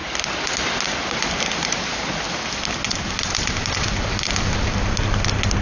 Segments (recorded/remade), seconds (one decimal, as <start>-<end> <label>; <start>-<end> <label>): 0.0-5.6 recorded